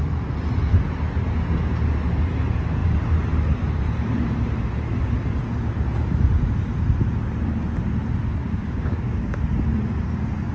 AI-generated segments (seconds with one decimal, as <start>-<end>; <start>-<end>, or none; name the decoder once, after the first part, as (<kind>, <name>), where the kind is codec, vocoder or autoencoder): 8.4-9.4 (codec, DAC)

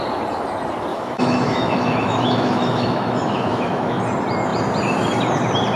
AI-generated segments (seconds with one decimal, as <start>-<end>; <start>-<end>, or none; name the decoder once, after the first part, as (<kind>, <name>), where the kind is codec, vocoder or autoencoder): 0.9-4.0 (autoencoder, DAC-VAE)